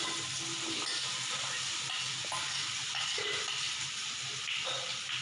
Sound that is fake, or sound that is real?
fake